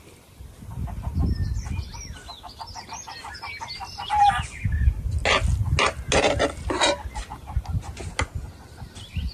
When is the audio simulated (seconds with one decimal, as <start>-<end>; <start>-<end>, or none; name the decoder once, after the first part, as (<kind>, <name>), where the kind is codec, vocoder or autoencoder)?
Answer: none